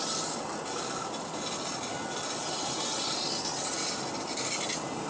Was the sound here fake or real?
real